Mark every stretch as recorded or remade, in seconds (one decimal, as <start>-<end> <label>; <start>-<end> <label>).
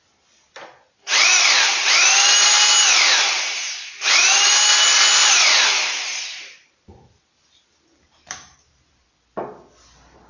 0.0-10.3 recorded